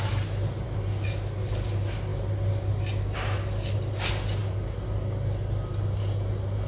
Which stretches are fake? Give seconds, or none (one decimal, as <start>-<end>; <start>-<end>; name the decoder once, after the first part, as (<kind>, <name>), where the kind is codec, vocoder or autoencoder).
none